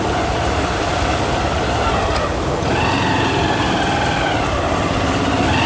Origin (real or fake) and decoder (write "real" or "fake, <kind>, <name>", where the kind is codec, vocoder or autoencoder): real